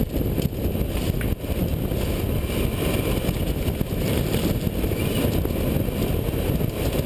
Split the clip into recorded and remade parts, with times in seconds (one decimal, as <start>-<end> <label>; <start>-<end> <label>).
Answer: 0.0-7.1 recorded